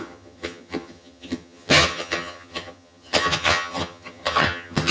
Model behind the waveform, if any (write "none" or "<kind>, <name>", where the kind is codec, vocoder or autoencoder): vocoder, HiFi-GAN